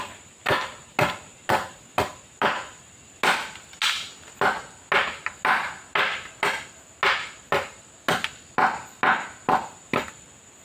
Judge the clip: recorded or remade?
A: recorded